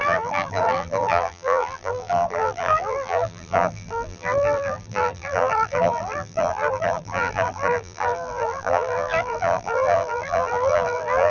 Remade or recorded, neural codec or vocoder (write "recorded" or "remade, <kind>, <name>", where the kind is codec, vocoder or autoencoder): remade, vocoder, BigVGAN v2